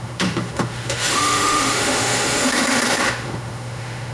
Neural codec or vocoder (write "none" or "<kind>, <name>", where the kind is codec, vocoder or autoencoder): autoencoder, DAC-VAE